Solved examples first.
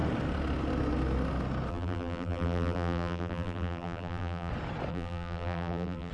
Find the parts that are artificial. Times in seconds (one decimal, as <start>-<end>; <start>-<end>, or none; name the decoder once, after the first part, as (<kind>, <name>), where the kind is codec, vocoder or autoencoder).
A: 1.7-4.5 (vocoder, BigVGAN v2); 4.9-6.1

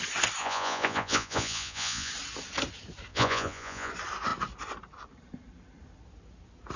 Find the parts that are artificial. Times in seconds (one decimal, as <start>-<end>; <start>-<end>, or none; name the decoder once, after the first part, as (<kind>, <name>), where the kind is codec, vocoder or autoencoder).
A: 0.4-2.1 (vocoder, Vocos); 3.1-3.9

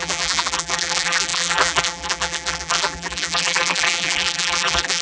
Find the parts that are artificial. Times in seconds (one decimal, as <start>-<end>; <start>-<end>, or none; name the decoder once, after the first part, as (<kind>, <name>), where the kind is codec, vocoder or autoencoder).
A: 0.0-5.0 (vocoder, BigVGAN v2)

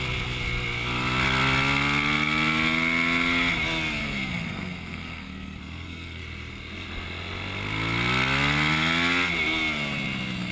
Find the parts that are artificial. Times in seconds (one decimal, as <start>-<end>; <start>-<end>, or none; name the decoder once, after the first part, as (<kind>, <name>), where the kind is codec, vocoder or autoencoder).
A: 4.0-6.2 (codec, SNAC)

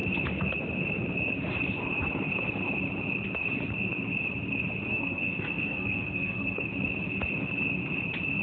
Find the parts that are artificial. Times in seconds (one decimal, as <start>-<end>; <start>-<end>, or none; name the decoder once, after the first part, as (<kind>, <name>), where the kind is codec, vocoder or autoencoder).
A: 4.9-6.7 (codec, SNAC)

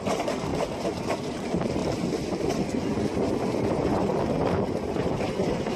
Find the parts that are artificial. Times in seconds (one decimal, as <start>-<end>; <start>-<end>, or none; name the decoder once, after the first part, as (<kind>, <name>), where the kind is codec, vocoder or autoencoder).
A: 0.0-0.5 (vocoder, BigVGAN v2); 1.3-1.8; 3.6-5.8